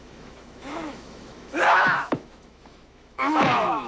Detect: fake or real fake